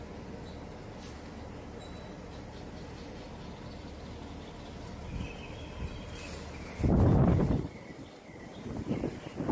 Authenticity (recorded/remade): recorded